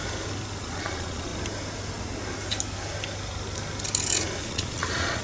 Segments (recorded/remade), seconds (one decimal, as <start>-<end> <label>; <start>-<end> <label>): 0.0-0.6 recorded; 0.6-1.3 remade; 1.3-4.4 recorded; 4.4-5.2 remade